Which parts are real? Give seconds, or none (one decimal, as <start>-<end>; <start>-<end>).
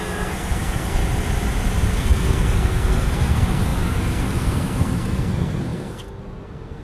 1.0-1.9